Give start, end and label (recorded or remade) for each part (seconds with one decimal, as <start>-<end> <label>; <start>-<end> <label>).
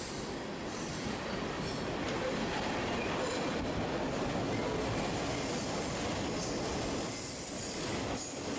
0.0-0.9 recorded; 0.9-1.8 remade; 1.8-8.6 recorded